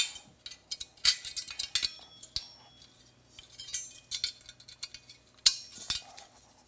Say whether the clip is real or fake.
real